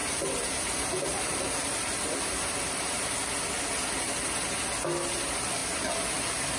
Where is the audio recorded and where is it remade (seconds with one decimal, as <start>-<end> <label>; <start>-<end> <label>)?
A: 0.0-1.6 remade; 1.6-6.6 recorded